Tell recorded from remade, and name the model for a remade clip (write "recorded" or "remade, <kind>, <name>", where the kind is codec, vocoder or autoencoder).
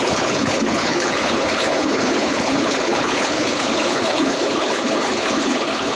remade, codec, HILCodec